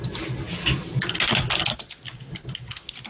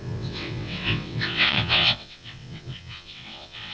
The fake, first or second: second